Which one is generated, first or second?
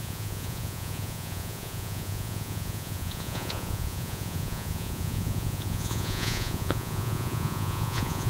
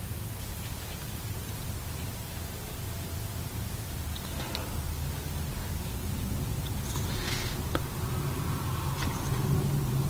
first